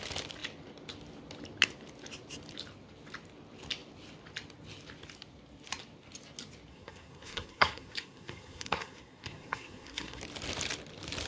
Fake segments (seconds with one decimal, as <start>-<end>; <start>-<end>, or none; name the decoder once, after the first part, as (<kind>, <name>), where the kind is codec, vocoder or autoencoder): 6.7-10.2 (codec, SNAC)